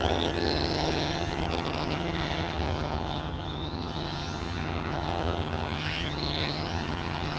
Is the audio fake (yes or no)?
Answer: yes